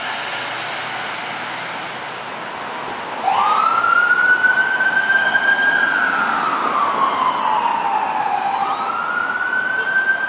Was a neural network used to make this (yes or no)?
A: no